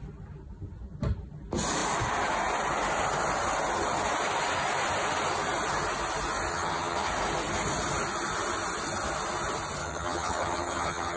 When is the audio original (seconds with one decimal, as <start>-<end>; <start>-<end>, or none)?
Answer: 0.0-6.5; 7.1-9.8